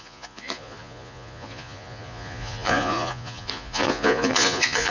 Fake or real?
fake